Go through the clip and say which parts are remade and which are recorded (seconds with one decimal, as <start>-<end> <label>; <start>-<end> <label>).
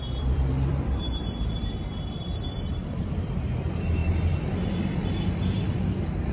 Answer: 0.0-6.3 remade